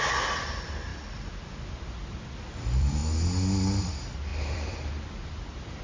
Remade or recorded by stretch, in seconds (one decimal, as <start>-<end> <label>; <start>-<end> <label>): 0.0-3.0 remade; 3.0-3.8 recorded; 3.8-5.8 remade